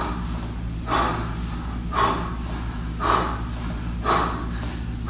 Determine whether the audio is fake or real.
real